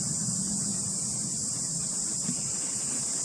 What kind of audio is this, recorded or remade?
recorded